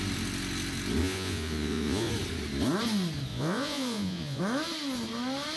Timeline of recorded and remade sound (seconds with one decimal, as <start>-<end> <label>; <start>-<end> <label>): 0.0-1.0 recorded; 1.0-2.1 remade; 2.1-3.3 recorded; 3.3-4.4 remade; 4.4-5.6 recorded